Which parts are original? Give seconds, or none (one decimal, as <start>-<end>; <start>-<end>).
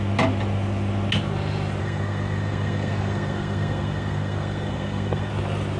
0.0-1.8; 5.3-5.8